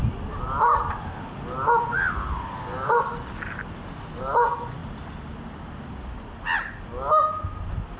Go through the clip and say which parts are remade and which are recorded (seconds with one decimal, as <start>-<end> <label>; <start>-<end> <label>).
0.0-8.0 recorded